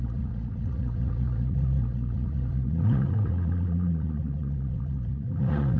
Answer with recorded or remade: remade